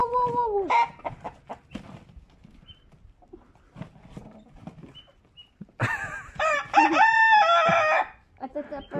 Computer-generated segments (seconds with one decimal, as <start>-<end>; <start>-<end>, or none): none